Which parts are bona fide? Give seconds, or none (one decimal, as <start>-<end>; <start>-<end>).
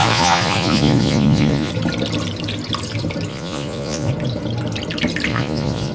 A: 1.7-3.3; 4.1-5.3